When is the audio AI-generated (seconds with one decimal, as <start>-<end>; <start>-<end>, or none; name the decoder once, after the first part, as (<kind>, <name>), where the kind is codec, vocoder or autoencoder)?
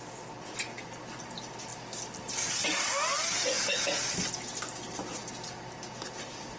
none